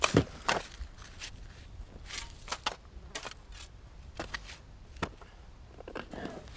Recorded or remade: recorded